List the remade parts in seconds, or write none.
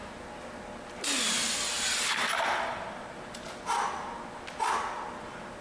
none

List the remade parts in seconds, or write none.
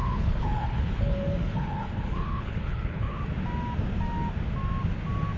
0.0-3.2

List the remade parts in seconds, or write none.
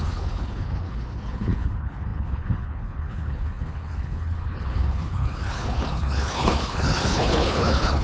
0.0-8.0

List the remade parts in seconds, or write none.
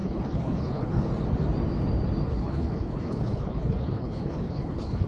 0.0-1.1; 2.3-5.1